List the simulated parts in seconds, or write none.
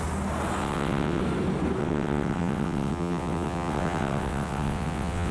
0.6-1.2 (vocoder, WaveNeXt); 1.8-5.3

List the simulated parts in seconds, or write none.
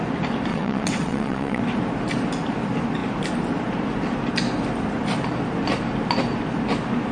0.5-1.6 (vocoder, WaveNeXt)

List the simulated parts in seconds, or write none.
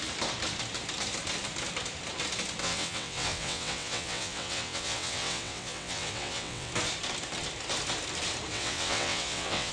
2.6-6.7 (vocoder, WaveNeXt); 8.5-9.7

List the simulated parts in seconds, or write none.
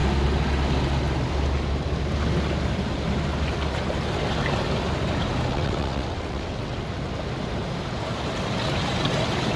5.5-6.8 (vocoder, WaveNeXt)